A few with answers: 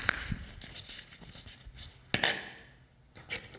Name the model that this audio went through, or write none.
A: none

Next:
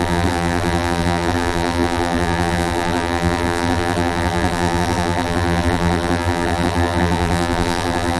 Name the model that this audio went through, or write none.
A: vocoder, BigVGAN v2